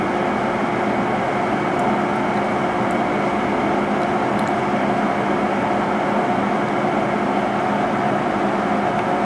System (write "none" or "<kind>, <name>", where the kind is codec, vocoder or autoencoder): none